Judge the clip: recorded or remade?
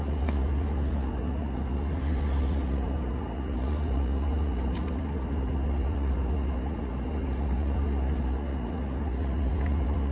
remade